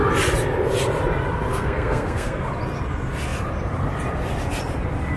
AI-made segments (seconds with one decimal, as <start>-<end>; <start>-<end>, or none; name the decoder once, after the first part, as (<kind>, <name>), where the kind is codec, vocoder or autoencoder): 1.5-2.5 (codec, SNAC)